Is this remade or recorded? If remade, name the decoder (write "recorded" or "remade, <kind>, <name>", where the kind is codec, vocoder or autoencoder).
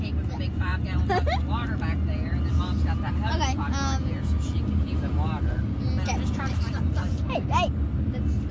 recorded